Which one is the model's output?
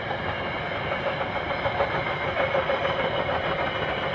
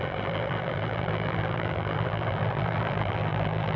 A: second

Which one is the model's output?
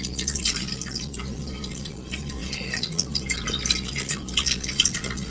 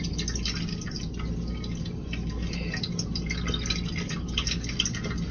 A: first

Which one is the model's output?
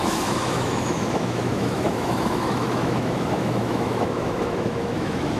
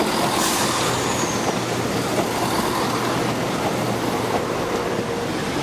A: first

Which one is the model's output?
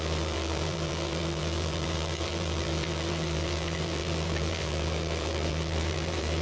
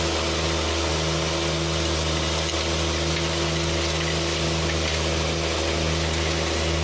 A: first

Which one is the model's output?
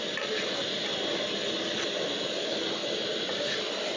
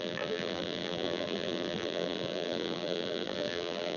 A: second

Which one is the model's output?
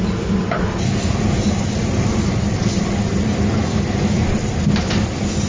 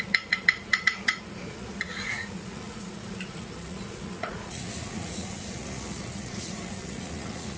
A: second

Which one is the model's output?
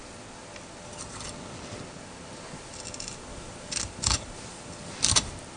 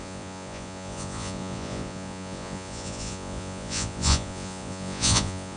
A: second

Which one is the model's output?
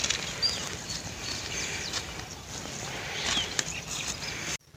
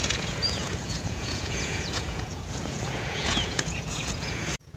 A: second